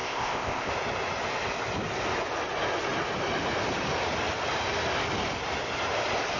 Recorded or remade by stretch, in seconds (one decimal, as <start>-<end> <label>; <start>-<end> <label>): 0.0-0.7 remade; 0.7-6.4 recorded